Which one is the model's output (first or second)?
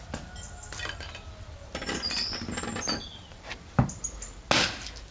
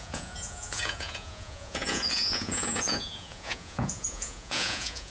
second